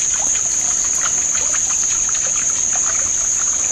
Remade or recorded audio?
recorded